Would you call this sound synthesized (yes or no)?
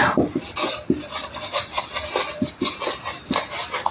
no